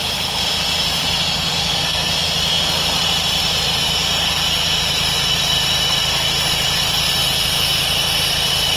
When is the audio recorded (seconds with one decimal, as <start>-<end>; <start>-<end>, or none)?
0.0-1.6; 2.1-8.8